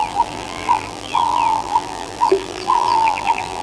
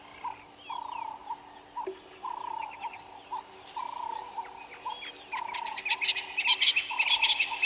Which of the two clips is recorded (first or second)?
second